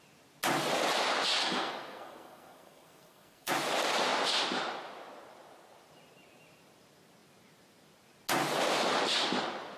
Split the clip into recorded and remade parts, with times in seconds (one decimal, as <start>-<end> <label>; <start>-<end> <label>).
0.0-1.4 recorded; 1.4-3.5 remade; 3.5-9.8 recorded